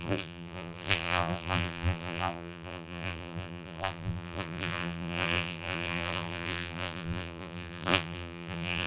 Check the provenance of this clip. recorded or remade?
remade